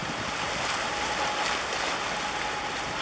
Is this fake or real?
real